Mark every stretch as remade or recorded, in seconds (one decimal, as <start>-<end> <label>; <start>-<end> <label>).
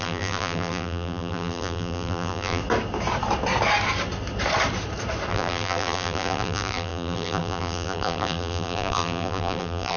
0.0-2.6 remade; 2.6-5.3 recorded; 5.3-10.0 remade